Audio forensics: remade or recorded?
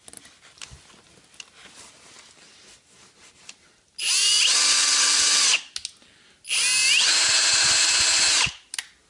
recorded